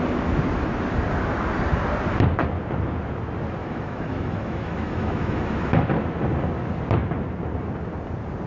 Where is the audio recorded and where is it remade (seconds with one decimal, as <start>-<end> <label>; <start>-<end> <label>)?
0.0-3.6 recorded; 3.6-5.8 remade; 5.8-8.5 recorded